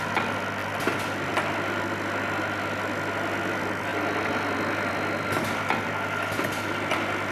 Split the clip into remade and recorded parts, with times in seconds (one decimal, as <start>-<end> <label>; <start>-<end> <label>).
0.0-0.6 recorded; 0.6-1.8 remade; 1.8-7.3 recorded